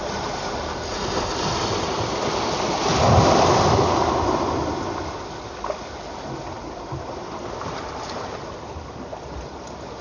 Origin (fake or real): real